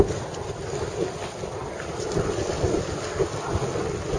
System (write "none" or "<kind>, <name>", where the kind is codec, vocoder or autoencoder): none